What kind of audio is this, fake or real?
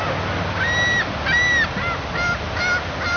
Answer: real